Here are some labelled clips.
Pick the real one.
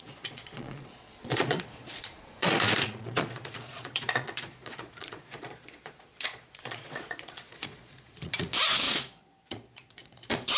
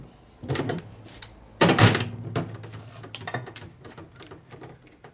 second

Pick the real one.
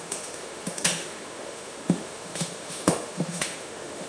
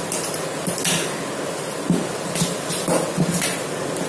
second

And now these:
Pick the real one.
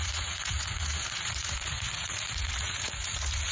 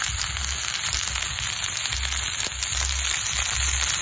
second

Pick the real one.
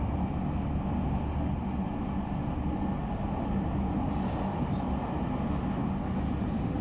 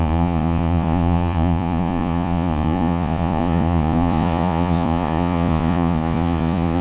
first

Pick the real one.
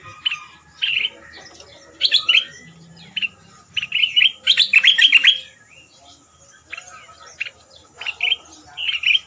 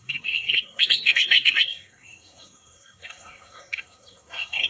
first